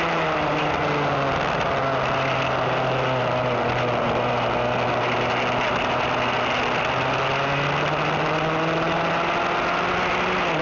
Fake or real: real